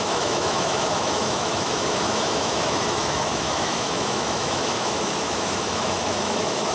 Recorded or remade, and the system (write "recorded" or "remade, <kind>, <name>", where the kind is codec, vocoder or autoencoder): remade, autoencoder, DAC-VAE